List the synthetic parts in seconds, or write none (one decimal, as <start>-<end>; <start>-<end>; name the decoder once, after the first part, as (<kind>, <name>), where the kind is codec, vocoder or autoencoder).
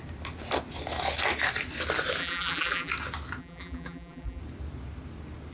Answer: 2.2-2.9 (vocoder, BigVGAN v2); 3.4-4.4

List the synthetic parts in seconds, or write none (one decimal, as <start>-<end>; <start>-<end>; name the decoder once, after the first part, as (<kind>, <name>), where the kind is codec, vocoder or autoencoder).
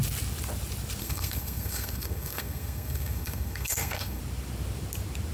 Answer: 1.0-4.2 (codec, SNAC)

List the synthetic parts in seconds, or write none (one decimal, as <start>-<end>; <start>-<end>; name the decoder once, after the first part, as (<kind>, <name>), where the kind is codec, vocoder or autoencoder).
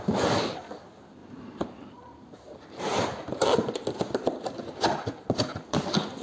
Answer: 1.2-3.8 (vocoder, BigVGAN v2)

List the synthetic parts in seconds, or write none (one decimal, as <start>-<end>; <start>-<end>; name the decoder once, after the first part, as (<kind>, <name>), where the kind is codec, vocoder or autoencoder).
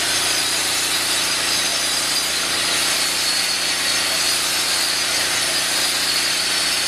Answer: none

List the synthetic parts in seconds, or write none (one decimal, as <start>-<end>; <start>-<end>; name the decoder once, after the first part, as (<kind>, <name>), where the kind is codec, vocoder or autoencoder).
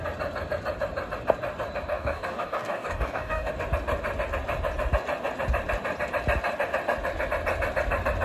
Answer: 1.9-3.5 (codec, DAC)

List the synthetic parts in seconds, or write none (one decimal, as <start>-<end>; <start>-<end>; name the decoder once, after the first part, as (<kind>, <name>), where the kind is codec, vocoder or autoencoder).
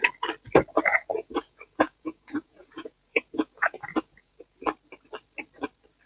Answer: 1.1-4.6 (vocoder, Vocos)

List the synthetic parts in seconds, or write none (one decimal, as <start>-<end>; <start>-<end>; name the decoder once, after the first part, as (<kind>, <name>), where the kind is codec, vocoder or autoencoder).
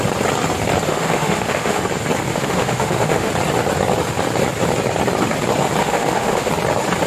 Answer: 0.9-1.8 (autoencoder, DAC-VAE); 2.3-3.3; 5.8-6.5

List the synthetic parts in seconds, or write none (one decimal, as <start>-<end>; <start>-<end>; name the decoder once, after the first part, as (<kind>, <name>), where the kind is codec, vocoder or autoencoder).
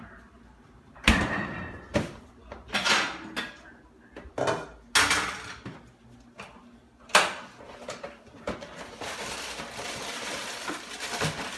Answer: 0.0-2.4 (vocoder, BigVGAN v2); 6.6-11.6